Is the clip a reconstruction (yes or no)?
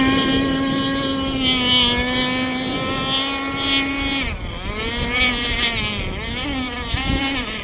no